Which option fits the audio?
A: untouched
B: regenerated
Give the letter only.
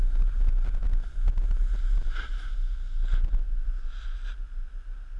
A